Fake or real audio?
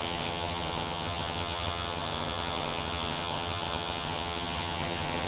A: fake